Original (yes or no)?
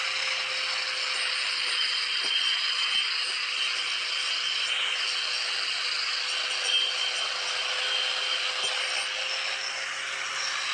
yes